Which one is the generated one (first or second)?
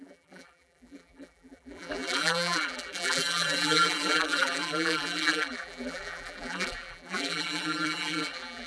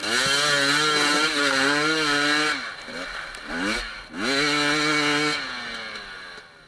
first